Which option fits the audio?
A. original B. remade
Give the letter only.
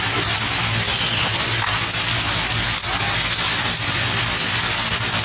A